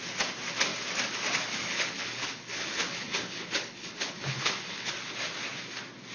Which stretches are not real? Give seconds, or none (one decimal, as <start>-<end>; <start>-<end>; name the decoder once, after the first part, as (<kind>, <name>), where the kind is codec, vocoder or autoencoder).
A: 1.6-4.9 (codec, HILCodec)